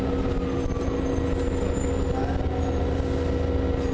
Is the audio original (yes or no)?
yes